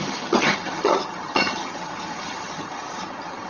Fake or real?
fake